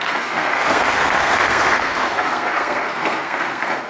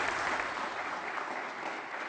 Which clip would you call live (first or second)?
second